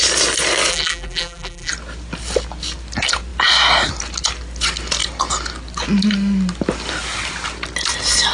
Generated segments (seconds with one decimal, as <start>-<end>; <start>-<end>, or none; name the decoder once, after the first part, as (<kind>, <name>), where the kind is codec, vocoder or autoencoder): 0.7-1.7 (vocoder, BigVGAN v2)